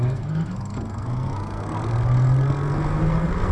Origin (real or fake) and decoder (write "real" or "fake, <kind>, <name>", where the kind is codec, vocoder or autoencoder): fake, codec, SNAC